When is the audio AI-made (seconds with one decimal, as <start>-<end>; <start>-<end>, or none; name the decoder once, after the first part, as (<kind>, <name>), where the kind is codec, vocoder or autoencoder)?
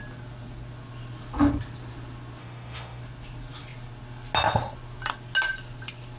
2.4-3.0 (autoencoder, DAC-VAE)